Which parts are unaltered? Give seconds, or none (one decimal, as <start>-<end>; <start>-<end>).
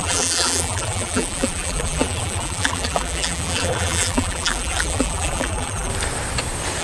5.9-6.8